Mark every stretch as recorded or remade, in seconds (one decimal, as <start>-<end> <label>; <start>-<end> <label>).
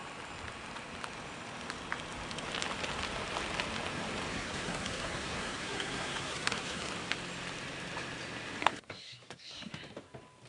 0.0-4.3 recorded; 4.3-6.9 remade; 6.9-8.6 recorded; 8.6-9.7 remade; 9.7-10.5 recorded